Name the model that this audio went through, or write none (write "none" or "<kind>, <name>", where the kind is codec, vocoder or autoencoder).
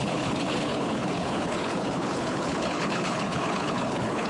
codec, HILCodec